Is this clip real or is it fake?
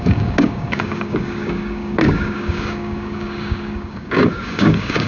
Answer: fake